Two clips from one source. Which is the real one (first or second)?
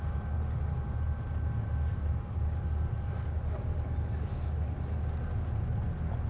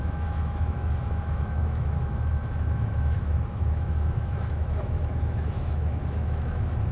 first